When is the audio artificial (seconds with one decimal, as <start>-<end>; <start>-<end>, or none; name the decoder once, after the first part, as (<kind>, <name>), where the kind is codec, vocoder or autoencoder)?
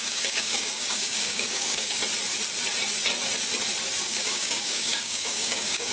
0.0-2.0 (codec, DAC); 4.1-5.9